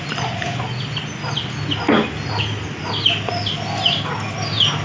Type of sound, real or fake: real